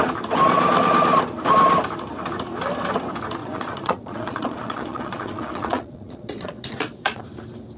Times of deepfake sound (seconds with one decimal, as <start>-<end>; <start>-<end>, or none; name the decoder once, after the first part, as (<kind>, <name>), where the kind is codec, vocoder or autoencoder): 3.4-7.2 (vocoder, Vocos)